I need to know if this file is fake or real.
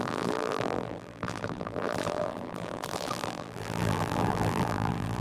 fake